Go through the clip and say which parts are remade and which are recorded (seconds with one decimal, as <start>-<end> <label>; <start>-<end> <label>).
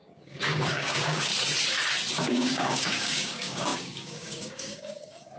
0.0-1.3 remade; 1.3-2.1 recorded; 2.1-5.4 remade